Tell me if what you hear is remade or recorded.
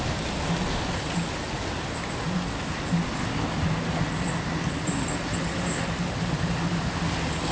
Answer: recorded